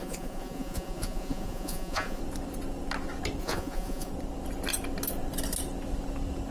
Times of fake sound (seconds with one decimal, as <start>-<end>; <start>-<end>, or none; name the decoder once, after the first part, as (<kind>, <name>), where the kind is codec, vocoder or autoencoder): 0.0-2.2 (vocoder, Vocos); 3.4-4.1